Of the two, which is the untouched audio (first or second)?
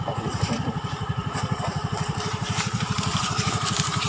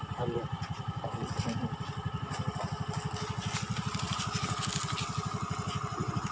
second